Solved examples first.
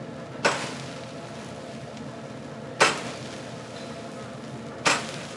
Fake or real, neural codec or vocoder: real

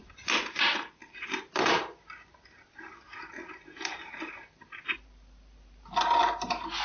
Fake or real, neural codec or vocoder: fake, vocoder, BigVGAN v2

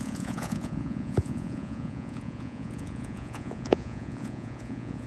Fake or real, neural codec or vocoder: fake, vocoder, Vocos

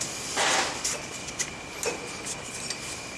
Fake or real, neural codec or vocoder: real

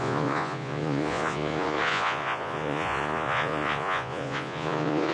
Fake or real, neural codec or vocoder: fake, vocoder, Vocos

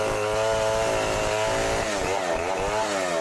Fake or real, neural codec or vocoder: real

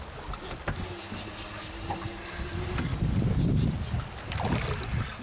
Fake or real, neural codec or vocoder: real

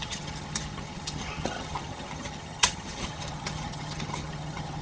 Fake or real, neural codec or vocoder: fake, vocoder, HiFi-GAN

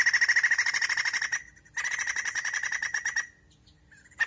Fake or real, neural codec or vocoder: real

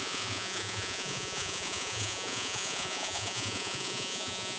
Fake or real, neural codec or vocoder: fake, vocoder, Vocos